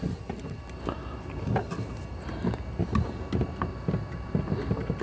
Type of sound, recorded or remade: recorded